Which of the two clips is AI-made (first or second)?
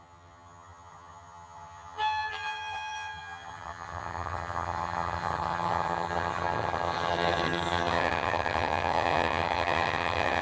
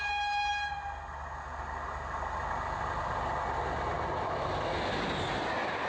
first